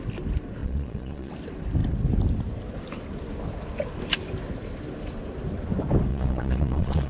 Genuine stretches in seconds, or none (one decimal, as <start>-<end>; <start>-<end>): 0.0-0.6; 1.3-6.1